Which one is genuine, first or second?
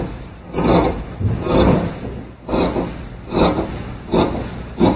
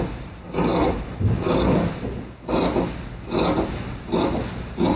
second